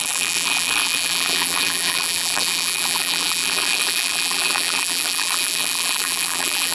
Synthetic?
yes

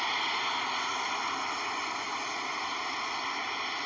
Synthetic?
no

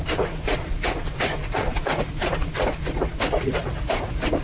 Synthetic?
yes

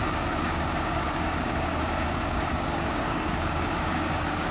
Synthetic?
yes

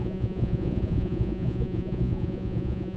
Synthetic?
yes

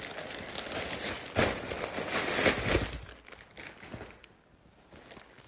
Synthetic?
no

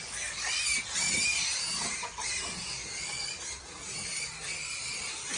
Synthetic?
yes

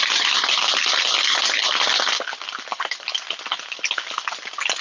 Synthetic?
no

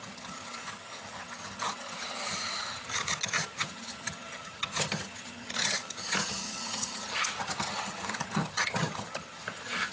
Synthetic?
yes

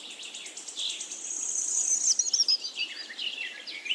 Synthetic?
no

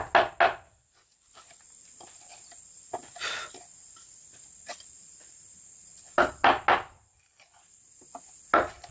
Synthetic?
no